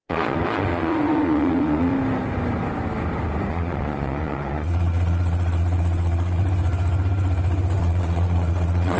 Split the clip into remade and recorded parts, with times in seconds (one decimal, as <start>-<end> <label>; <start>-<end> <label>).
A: 0.0-1.9 remade; 1.9-3.5 recorded; 3.5-6.4 remade; 6.4-7.8 recorded; 7.8-9.0 remade